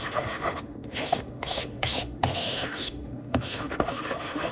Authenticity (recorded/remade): remade